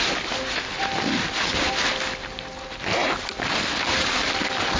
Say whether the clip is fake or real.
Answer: real